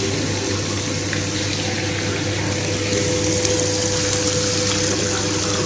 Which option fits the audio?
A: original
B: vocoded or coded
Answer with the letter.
A